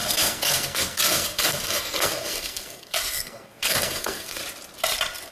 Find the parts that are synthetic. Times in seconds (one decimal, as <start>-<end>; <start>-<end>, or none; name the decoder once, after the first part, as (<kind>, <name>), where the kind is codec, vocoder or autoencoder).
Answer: 0.0-4.4 (codec, SNAC)